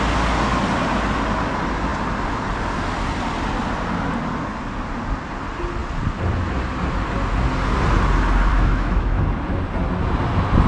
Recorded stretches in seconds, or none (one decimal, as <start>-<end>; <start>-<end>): 0.0-8.5; 9.2-10.7